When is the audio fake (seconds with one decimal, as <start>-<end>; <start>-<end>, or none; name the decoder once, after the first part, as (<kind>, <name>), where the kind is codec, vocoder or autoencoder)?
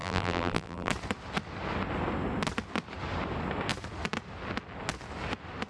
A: 0.0-0.9 (vocoder, BigVGAN v2)